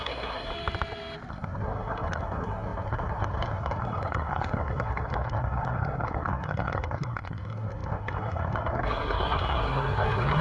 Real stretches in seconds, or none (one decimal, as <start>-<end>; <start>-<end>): 0.5-1.3